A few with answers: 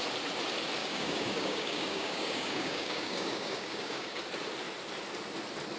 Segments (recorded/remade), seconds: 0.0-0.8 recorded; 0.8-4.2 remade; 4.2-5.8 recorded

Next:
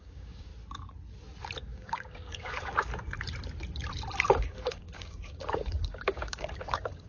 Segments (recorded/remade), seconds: 0.0-0.5 remade; 0.5-1.6 recorded; 1.6-2.9 remade; 2.9-4.3 recorded; 4.3-7.1 remade

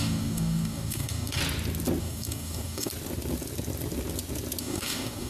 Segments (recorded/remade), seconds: 0.0-1.4 remade; 1.4-2.0 recorded; 2.0-2.9 remade; 2.9-4.6 recorded; 4.6-5.3 remade